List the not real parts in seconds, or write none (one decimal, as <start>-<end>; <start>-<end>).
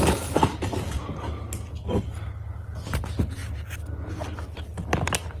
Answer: none